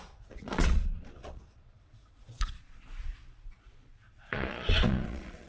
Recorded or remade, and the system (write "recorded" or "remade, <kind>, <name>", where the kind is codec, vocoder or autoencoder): remade, vocoder, Vocos